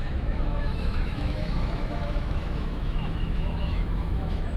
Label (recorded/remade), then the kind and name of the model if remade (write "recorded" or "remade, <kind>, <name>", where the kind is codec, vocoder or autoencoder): remade, autoencoder, DAC-VAE